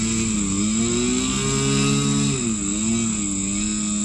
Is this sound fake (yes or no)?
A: no